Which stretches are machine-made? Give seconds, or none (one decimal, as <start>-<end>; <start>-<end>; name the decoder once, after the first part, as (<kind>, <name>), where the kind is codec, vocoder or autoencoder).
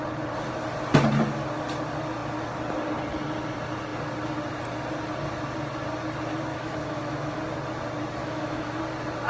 6.5-7.4 (autoencoder, DAC-VAE); 8.2-8.8